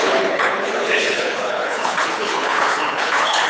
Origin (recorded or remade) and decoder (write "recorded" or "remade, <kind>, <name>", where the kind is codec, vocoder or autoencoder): remade, codec, HILCodec